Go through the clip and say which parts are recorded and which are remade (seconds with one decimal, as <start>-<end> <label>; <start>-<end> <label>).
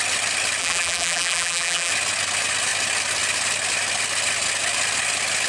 0.0-0.6 recorded; 0.6-1.9 remade; 1.9-5.5 recorded